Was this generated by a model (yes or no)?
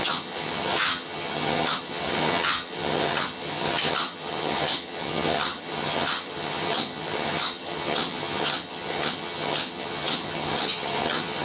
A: yes